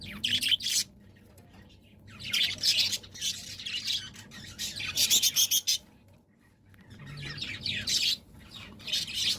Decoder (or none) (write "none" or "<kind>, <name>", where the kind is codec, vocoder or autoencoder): none